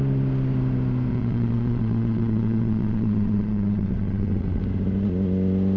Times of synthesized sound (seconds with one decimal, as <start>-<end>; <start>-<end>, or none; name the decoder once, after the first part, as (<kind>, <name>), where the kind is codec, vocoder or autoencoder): 1.1-4.6 (vocoder, WaveNeXt)